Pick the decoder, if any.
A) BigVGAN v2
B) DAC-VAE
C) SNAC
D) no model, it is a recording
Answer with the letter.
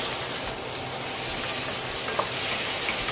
D